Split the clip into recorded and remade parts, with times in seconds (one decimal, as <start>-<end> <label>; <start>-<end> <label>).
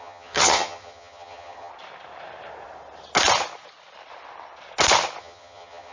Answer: 0.0-1.7 remade; 1.7-5.2 recorded; 5.2-5.9 remade